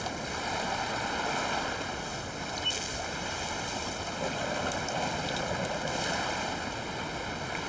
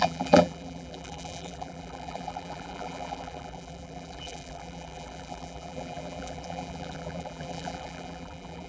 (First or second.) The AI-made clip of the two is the second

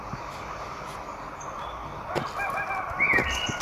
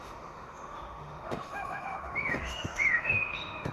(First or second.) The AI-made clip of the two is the second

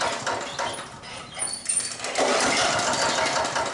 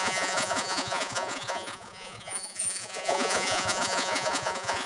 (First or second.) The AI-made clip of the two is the second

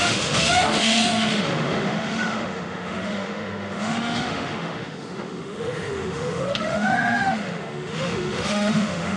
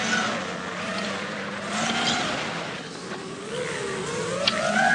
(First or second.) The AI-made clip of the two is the first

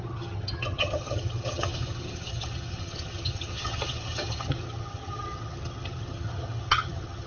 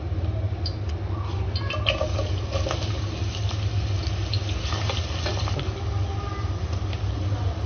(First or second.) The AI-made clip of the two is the first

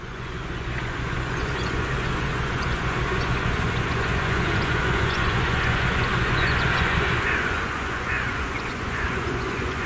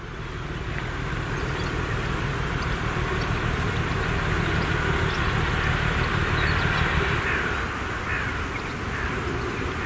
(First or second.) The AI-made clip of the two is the first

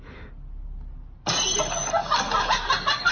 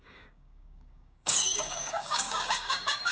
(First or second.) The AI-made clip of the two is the second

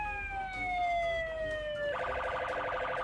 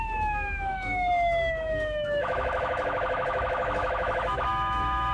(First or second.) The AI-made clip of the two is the second